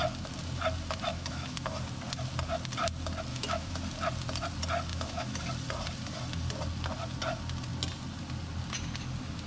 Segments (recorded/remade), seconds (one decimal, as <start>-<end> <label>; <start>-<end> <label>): 0.0-1.1 recorded; 1.1-1.7 remade; 1.7-3.3 recorded; 3.3-3.8 remade; 3.8-4.9 recorded; 4.9-5.4 remade; 5.4-9.5 recorded